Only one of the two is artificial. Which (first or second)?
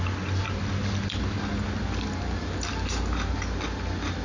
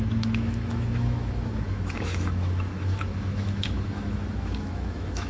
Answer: second